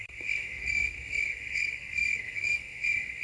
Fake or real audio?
fake